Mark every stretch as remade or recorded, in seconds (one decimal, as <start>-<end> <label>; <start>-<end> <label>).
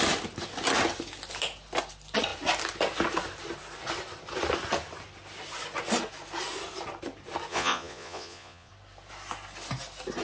0.0-7.5 recorded; 7.5-8.7 remade; 8.7-10.2 recorded